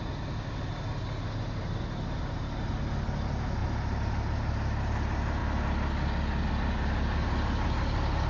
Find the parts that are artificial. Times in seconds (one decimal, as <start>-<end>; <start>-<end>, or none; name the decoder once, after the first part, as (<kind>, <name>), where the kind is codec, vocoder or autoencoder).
none